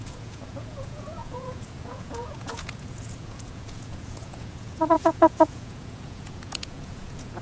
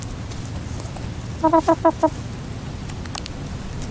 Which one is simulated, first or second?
first